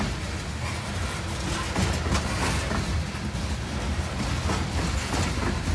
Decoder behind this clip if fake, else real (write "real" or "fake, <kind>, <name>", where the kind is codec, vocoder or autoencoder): real